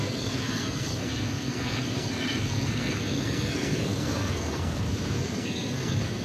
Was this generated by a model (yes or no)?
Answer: yes